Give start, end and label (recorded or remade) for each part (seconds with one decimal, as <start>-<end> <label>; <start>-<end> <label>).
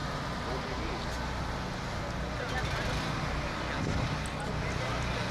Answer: 0.0-5.3 recorded